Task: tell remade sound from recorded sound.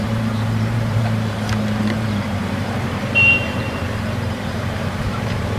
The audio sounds remade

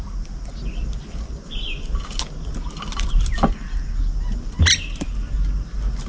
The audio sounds recorded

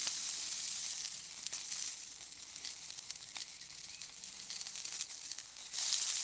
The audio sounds remade